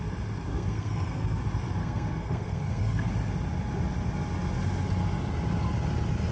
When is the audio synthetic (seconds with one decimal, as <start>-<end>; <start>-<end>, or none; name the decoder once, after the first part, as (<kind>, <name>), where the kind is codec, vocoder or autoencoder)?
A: 0.5-1.4 (codec, SNAC); 1.8-3.1